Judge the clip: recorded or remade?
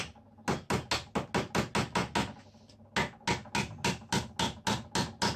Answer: recorded